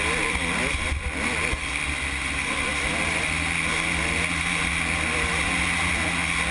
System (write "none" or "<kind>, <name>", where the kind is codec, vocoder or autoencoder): none